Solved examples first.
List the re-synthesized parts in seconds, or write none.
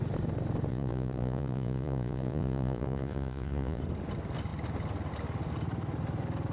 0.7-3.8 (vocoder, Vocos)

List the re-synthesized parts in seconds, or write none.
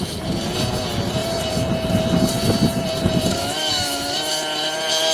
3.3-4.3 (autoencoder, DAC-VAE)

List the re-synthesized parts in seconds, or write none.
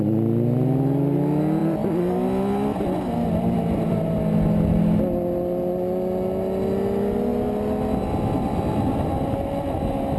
1.6-4.2 (vocoder, BigVGAN v2)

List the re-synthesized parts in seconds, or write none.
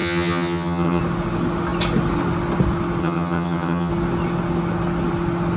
0.0-1.0 (vocoder, HiFi-GAN); 3.0-3.9